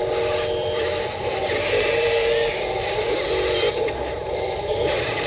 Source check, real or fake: fake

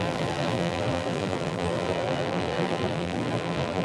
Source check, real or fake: fake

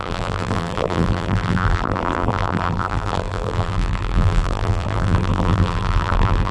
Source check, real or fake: fake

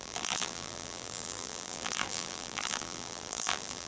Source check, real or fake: fake